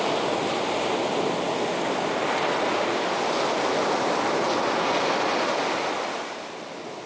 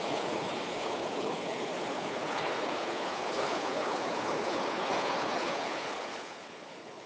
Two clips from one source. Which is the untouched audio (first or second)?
first